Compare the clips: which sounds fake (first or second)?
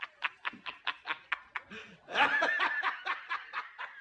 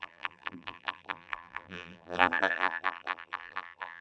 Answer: second